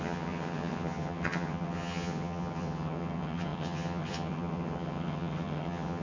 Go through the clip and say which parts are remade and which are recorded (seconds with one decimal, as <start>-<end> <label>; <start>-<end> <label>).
0.0-6.0 remade